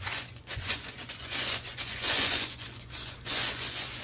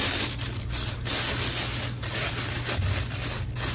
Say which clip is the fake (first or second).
first